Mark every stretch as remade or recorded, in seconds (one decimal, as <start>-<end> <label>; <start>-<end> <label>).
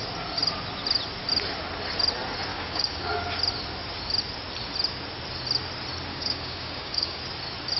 0.0-2.5 recorded; 2.5-3.1 remade; 3.1-6.1 recorded; 6.1-7.2 remade; 7.2-7.8 recorded